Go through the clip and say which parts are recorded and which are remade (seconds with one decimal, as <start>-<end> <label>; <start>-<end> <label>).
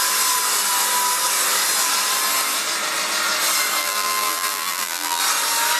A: 0.0-3.8 recorded; 3.8-5.2 remade; 5.2-5.8 recorded